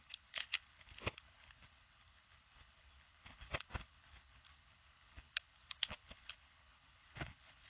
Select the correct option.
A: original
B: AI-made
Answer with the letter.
B